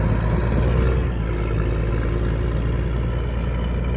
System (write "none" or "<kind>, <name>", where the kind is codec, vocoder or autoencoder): none